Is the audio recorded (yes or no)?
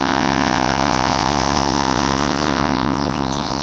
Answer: no